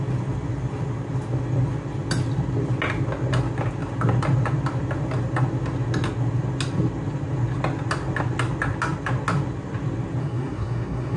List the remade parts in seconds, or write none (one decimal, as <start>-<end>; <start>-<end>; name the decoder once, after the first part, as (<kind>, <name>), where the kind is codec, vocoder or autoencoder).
10.2-11.2 (codec, SNAC)